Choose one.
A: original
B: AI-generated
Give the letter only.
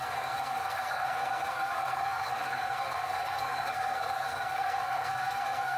B